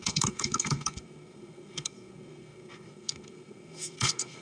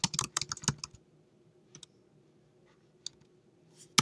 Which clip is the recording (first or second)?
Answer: second